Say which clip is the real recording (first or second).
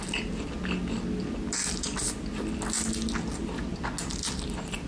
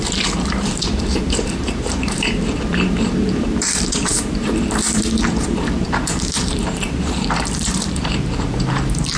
first